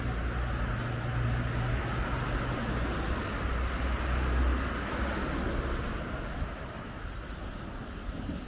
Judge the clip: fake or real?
real